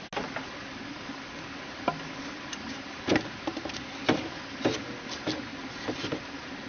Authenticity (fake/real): real